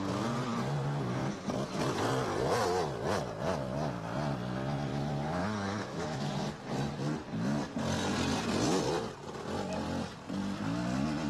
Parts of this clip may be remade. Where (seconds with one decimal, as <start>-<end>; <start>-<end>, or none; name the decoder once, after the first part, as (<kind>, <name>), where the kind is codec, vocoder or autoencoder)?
4.9-6.5 (autoencoder, DAC-VAE)